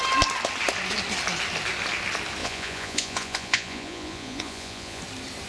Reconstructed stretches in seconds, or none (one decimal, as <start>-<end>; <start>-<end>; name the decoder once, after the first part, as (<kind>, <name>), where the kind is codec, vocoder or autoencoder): 2.4-5.0 (vocoder, Vocos)

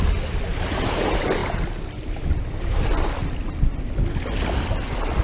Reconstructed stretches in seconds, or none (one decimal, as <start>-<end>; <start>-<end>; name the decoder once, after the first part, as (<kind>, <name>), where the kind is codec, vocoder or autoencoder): 0.5-1.0 (vocoder, BigVGAN v2)

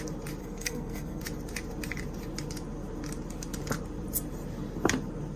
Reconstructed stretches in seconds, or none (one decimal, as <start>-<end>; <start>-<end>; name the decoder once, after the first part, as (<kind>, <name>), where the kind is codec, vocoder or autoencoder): 0.4-1.2 (codec, SNAC)

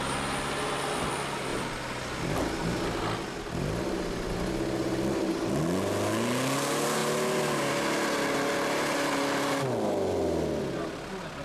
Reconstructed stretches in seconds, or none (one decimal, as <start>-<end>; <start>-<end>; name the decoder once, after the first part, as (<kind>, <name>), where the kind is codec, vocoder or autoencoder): none

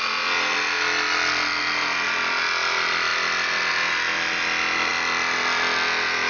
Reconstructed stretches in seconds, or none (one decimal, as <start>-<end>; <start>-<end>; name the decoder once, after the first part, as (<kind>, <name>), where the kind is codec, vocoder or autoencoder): none

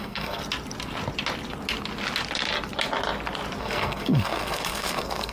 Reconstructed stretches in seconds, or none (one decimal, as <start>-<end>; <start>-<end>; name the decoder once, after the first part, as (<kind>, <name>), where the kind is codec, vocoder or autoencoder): 0.0-0.4 (codec, SNAC); 3.6-5.3

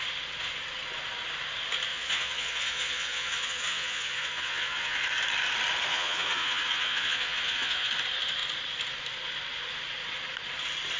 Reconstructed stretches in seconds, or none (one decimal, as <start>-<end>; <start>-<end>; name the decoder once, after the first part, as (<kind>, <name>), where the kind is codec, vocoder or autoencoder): 1.9-5.0 (vocoder, Vocos); 5.9-7.9